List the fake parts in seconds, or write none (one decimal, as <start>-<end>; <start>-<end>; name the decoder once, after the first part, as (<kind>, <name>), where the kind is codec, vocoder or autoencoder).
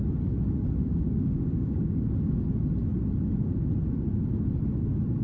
0.8-2.1 (codec, DAC)